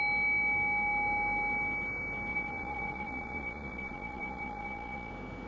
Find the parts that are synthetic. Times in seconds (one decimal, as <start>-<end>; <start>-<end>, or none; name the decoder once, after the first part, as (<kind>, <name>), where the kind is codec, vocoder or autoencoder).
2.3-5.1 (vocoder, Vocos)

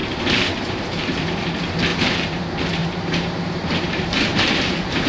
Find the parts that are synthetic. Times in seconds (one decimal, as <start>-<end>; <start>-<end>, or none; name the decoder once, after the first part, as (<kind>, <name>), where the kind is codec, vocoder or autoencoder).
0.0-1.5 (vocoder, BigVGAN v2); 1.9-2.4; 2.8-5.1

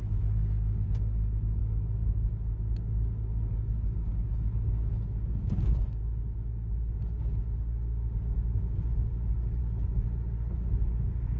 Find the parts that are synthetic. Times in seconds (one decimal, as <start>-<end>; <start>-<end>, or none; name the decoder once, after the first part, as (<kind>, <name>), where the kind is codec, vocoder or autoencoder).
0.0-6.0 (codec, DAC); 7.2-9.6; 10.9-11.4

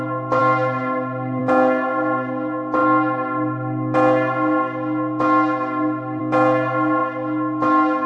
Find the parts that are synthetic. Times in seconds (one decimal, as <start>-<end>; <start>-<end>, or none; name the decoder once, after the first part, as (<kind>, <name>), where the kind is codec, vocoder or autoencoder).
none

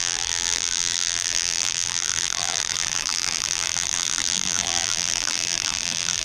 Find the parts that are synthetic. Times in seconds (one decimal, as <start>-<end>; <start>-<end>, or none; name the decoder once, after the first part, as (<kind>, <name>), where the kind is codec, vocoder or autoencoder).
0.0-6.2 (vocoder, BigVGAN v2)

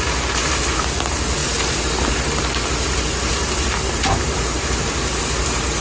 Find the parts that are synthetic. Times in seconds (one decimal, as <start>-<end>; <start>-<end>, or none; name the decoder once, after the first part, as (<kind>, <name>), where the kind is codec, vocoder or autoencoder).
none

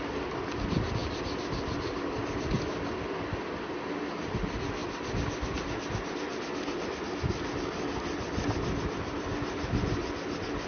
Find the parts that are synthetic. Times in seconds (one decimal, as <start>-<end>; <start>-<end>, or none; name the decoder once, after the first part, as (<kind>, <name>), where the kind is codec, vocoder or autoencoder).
none

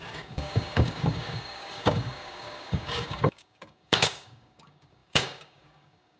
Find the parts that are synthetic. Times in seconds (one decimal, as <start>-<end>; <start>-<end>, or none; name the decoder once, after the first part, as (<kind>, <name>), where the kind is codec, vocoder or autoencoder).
0.0-6.2 (codec, DAC)